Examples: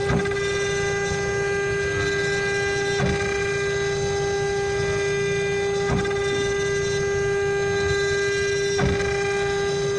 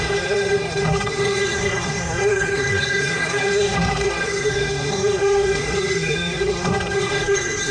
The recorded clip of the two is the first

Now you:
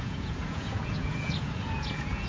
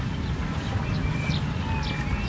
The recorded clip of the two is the second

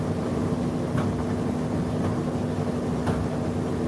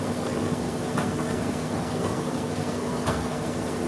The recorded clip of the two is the first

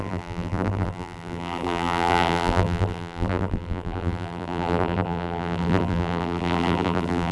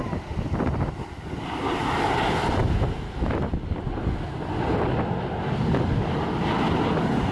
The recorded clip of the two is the second